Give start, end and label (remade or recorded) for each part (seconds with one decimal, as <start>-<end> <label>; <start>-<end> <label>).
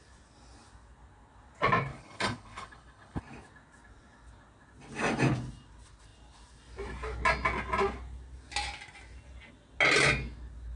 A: 0.0-1.9 recorded; 1.9-3.2 remade; 3.2-10.8 recorded